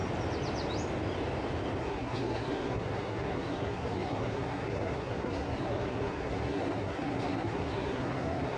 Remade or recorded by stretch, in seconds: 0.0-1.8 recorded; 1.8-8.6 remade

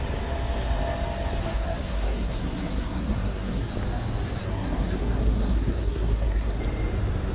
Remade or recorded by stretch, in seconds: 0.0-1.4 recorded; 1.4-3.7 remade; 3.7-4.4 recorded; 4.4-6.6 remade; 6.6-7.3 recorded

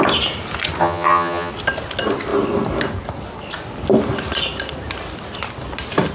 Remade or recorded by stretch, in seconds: 0.0-0.8 recorded; 0.8-1.5 remade; 1.5-6.1 recorded